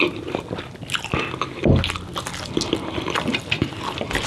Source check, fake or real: real